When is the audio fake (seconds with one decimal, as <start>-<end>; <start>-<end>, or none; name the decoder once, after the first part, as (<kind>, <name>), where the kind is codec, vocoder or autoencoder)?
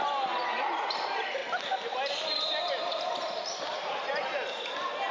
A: 0.0-1.4 (vocoder, BigVGAN v2); 2.7-5.1